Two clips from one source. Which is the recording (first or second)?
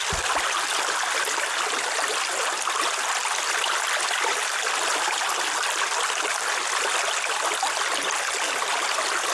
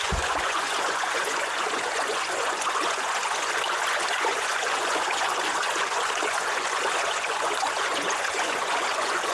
first